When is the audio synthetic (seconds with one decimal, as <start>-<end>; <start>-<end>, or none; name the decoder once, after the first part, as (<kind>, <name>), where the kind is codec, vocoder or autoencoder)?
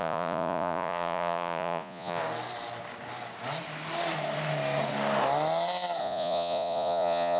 0.0-2.2 (vocoder, Vocos); 6.0-7.4